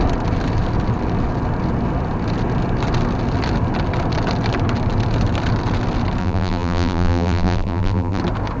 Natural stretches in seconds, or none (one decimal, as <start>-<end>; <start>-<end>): 0.0-6.2; 8.2-8.6